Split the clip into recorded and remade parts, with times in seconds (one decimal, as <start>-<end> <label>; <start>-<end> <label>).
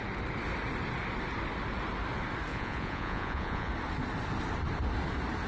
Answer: 0.0-2.5 recorded; 2.5-3.7 remade; 3.7-5.5 recorded